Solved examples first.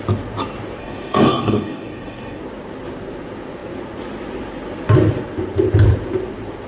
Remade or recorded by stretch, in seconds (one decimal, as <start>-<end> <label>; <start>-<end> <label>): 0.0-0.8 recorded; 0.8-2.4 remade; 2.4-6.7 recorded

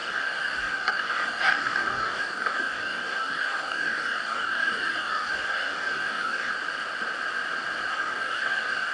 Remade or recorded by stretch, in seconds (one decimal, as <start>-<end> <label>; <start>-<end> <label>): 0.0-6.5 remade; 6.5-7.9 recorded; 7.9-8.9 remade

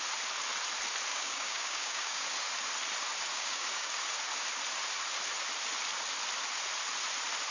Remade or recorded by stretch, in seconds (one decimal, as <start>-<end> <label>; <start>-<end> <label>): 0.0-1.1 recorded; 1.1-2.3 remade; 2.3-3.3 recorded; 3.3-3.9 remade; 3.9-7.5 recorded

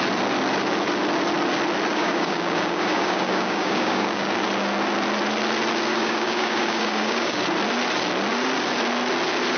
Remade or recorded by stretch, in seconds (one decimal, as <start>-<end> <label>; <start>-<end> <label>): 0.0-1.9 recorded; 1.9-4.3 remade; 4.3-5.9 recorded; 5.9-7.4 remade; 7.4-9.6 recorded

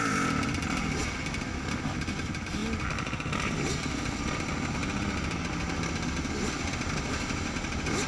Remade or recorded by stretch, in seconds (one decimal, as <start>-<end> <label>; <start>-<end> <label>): 0.0-8.1 recorded